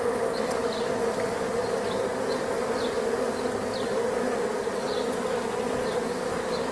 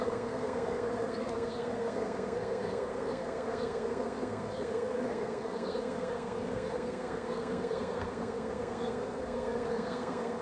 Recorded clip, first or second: first